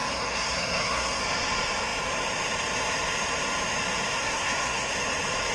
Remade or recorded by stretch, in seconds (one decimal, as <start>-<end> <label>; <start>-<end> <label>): 0.0-1.2 remade; 1.2-4.2 recorded; 4.2-4.9 remade; 4.9-5.5 recorded